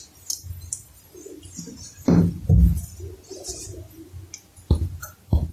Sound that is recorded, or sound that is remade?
recorded